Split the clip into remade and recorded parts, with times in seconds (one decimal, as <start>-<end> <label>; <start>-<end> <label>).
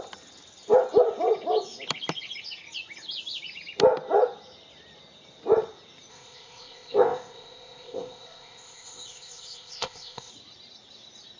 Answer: 0.0-6.1 recorded; 6.1-10.3 remade; 10.3-11.4 recorded